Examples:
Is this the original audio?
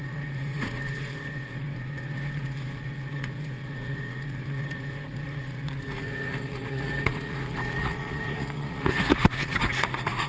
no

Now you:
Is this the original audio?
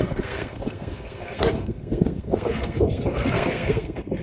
no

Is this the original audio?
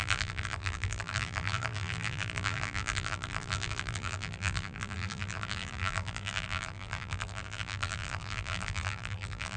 no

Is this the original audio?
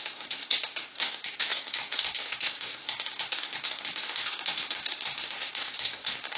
no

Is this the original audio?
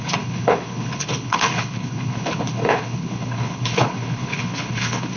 no